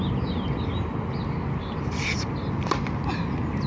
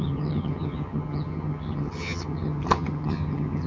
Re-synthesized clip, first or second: second